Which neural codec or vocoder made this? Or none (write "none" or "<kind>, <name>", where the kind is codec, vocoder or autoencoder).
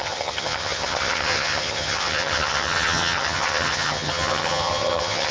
vocoder, HiFi-GAN